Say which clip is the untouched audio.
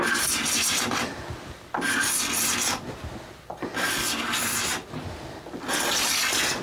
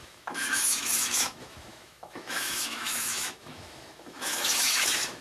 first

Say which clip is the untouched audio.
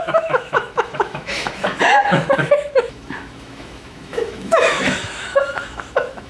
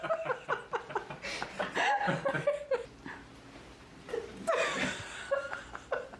second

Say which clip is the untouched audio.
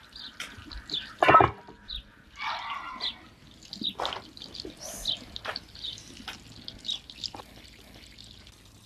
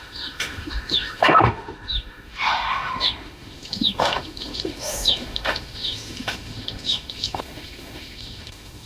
first